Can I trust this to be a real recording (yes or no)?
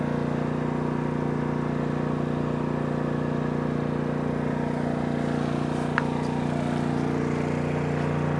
yes